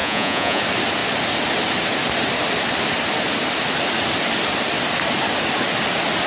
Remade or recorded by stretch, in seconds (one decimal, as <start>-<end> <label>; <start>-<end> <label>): 0.0-0.6 remade; 0.6-6.3 recorded